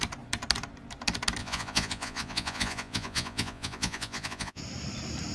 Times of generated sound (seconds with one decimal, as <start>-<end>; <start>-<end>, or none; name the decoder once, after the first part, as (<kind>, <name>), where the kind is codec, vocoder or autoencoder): 1.4-4.6 (vocoder, Vocos)

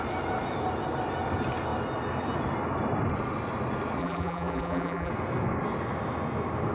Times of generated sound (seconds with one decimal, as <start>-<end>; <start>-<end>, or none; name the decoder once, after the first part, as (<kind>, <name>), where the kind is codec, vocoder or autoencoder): 4.0-5.1 (vocoder, BigVGAN v2)

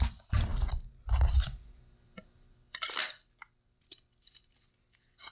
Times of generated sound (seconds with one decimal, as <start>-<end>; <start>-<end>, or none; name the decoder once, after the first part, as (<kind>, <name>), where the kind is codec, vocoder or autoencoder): 0.0-5.3 (vocoder, BigVGAN v2)

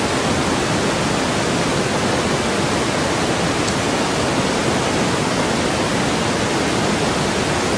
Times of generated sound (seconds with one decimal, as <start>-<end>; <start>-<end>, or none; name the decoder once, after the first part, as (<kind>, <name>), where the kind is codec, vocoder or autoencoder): none